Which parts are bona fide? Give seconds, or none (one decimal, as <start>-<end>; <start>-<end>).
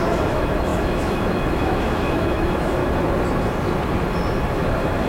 2.8-5.1